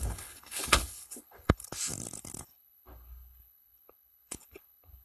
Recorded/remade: remade